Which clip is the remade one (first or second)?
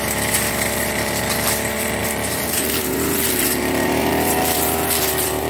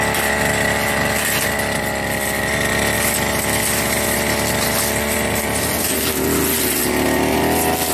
first